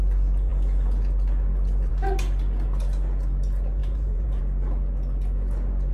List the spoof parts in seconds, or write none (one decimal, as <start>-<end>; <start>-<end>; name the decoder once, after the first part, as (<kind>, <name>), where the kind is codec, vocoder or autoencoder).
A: 3.8-4.4 (vocoder, BigVGAN v2)